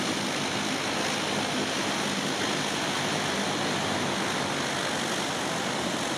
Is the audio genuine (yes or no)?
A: yes